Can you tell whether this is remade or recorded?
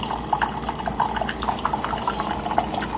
recorded